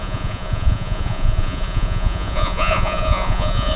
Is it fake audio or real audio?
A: fake